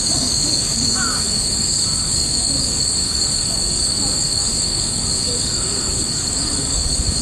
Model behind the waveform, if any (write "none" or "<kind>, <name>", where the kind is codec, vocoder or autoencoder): codec, DAC